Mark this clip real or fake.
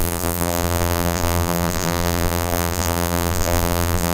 fake